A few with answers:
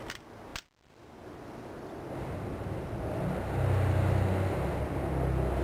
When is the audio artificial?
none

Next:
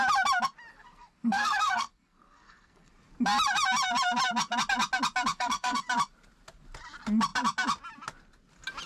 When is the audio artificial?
0.7-2.9 (codec, SNAC); 5.3-5.8

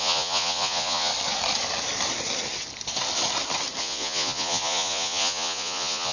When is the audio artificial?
0.0-1.1 (vocoder, Vocos); 3.8-6.1

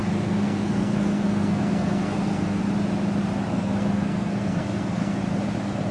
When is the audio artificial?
0.0-2.6 (codec, SNAC); 3.5-5.2

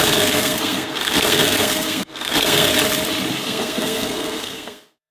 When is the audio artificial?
0.0-2.7 (codec, SNAC); 3.3-5.1

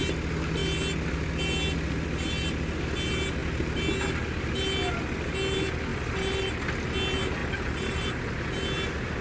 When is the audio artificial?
5.9-6.7 (vocoder, BigVGAN v2); 7.4-8.3

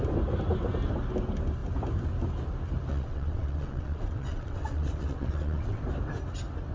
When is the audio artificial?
2.9-5.8 (vocoder, WaveNeXt)